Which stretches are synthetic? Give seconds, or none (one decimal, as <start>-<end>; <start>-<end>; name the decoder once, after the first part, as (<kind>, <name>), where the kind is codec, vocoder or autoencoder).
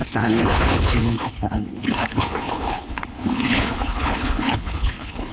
0.0-5.3 (codec, HILCodec)